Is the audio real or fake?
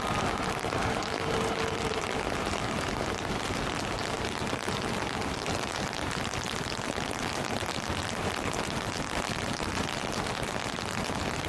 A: real